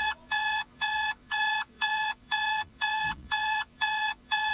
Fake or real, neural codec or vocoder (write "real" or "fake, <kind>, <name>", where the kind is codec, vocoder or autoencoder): fake, vocoder, Vocos